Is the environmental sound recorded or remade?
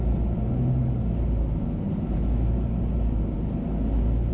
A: recorded